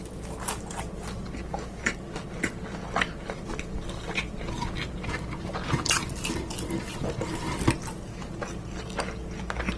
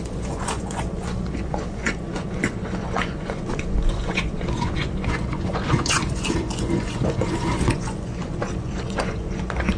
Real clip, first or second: first